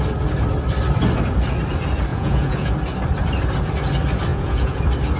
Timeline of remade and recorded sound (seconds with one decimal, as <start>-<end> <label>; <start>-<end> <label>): 0.0-2.1 recorded; 2.1-2.7 remade; 2.7-4.3 recorded; 4.3-4.8 remade; 4.8-5.2 recorded